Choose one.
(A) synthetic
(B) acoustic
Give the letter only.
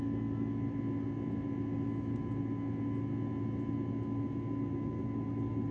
B